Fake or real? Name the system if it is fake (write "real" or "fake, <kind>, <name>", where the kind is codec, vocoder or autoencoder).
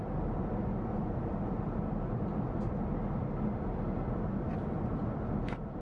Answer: real